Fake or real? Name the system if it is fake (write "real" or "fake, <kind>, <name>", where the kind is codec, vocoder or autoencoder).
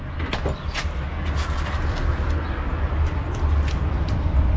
real